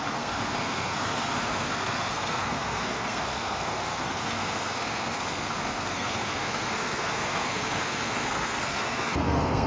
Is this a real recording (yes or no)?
no